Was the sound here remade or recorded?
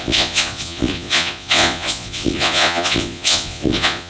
remade